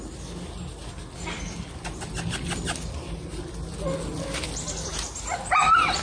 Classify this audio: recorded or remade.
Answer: recorded